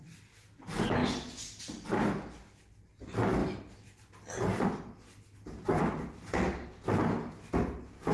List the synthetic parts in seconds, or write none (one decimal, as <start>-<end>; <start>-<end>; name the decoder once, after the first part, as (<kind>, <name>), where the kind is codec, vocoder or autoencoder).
none